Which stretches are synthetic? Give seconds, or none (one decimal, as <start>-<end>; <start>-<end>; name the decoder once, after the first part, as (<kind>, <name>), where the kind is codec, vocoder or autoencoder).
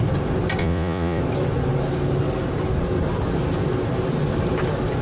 0.6-1.2 (vocoder, Vocos)